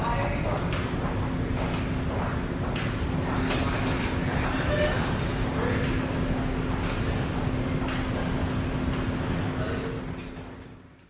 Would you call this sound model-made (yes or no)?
no